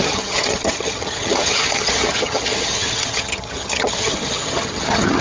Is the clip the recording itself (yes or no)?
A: no